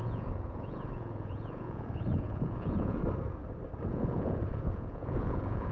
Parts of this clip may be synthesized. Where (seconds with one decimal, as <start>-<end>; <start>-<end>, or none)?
0.0-3.0; 3.9-5.7